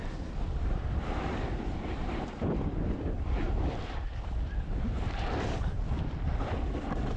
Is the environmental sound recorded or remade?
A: remade